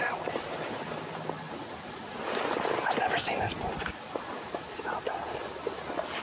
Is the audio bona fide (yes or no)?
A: yes